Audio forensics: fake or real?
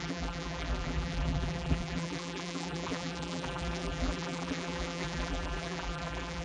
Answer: fake